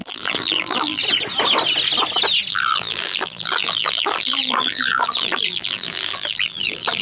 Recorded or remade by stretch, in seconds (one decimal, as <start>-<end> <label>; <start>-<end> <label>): 0.0-1.0 remade; 1.0-2.5 recorded; 2.5-7.0 remade